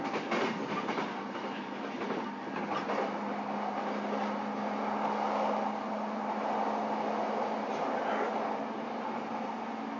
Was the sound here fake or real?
real